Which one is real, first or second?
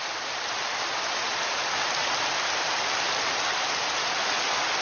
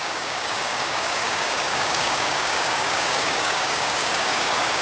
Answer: first